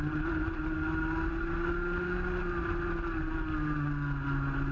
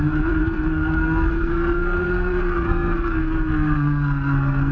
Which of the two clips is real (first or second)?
first